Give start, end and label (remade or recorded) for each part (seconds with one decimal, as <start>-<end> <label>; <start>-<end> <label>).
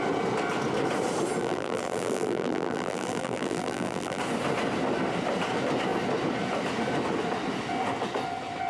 0.0-1.4 recorded; 1.4-4.2 remade; 4.2-8.7 recorded